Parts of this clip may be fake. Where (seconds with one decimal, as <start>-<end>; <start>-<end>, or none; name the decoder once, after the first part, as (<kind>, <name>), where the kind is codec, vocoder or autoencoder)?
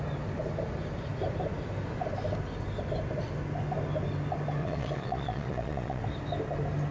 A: 4.6-6.0 (vocoder, Vocos)